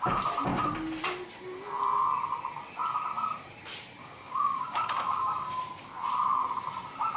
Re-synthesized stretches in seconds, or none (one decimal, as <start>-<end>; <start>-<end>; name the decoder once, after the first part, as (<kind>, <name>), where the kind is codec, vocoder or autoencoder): 4.0-5.6 (codec, DAC)